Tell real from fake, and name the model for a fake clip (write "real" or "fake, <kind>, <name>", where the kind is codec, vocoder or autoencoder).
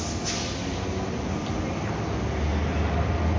real